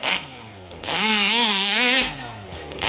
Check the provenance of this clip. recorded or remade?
remade